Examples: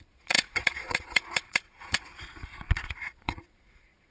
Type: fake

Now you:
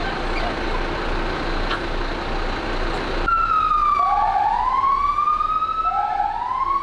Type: real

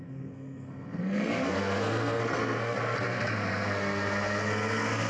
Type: fake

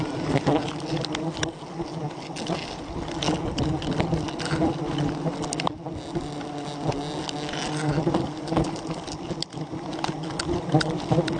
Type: real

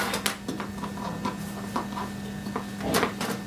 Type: real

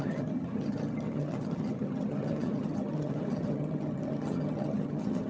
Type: fake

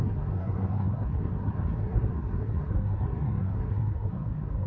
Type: fake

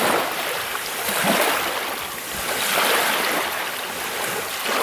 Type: real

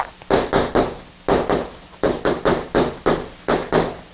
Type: real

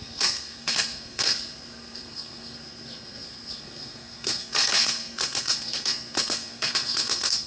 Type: fake